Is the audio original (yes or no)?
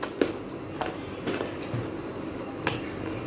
yes